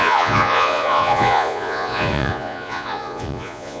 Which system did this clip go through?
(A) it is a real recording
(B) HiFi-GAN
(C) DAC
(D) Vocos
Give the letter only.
D